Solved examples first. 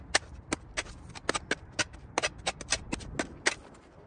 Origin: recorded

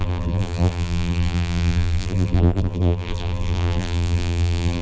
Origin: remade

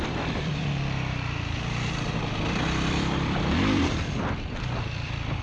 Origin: remade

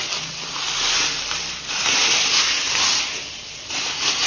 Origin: recorded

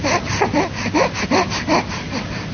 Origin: recorded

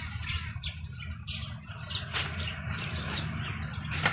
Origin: remade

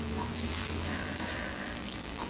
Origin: remade